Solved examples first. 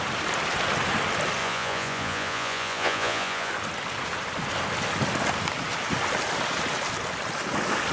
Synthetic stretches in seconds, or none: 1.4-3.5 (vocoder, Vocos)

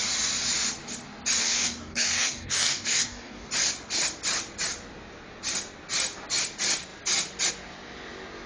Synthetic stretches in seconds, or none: 1.4-3.5 (codec, DAC)

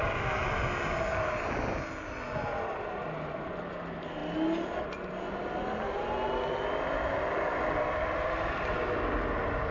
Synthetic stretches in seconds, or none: none

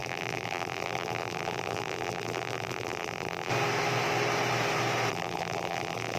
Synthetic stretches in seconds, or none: 0.0-3.5 (vocoder, BigVGAN v2); 5.1-6.2

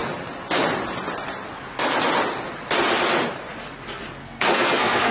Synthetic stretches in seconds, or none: 4.2-5.1 (codec, SNAC)

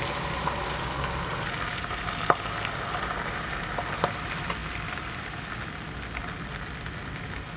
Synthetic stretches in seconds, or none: none